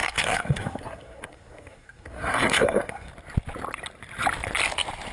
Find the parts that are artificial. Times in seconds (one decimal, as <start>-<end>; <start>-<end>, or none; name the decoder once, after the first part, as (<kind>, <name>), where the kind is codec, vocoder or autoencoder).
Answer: 0.0-3.1 (codec, SNAC)